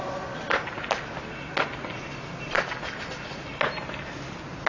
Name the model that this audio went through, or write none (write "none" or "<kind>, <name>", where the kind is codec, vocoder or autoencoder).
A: none